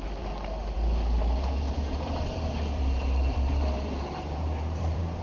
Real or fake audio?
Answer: fake